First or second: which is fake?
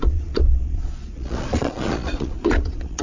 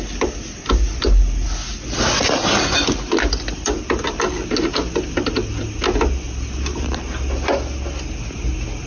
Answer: first